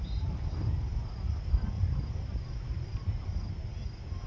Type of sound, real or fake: real